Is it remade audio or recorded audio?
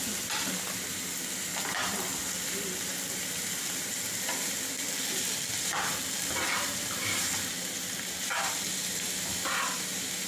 remade